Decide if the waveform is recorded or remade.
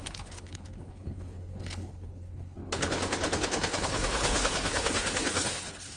remade